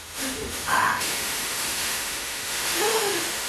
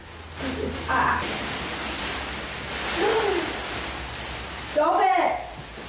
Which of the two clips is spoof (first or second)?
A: first